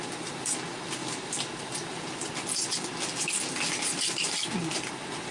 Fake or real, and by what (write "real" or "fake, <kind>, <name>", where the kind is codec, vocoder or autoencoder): real